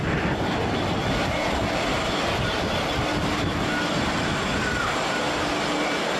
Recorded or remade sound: recorded